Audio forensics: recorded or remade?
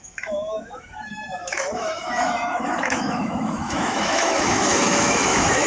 remade